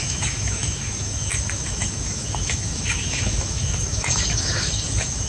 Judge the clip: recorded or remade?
remade